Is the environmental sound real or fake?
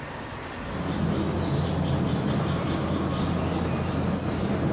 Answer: real